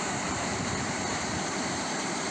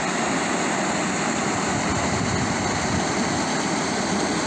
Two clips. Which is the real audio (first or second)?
second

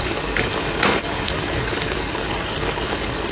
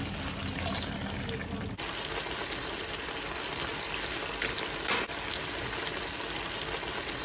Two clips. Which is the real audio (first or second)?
second